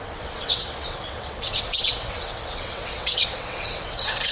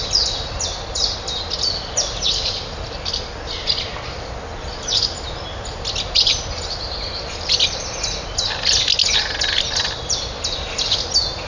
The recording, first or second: second